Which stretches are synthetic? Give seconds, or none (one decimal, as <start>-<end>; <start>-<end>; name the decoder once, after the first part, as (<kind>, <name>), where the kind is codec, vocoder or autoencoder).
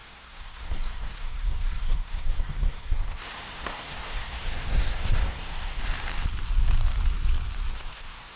0.0-5.8 (codec, SNAC); 7.7-8.4